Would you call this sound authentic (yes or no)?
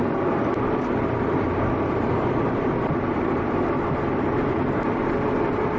no